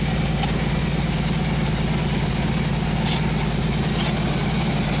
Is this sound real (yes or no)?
yes